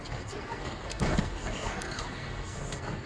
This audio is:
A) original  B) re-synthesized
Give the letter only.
B